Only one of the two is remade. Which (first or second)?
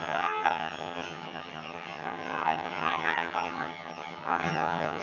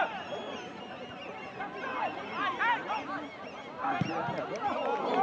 first